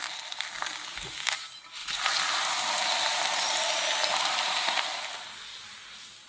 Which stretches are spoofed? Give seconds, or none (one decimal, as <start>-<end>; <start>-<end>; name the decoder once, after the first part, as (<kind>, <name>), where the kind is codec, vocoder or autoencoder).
1.8-4.8 (vocoder, BigVGAN v2)